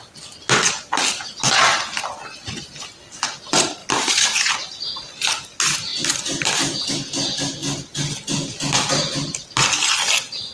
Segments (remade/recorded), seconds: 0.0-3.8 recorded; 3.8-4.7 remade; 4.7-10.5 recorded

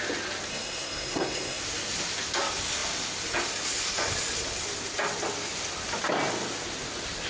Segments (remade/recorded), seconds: 0.0-0.5 recorded; 0.5-1.6 remade; 1.6-7.3 recorded